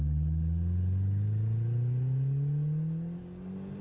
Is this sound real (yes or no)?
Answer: yes